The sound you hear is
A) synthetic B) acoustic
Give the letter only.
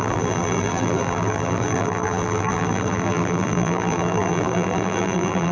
A